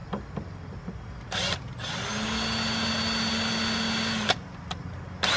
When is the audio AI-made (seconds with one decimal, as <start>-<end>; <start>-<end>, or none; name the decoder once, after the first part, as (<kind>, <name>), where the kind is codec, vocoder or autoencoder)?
none